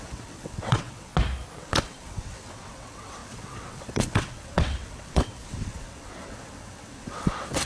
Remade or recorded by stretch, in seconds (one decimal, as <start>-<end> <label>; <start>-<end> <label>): 0.0-1.1 remade; 1.1-1.6 recorded; 1.6-7.7 remade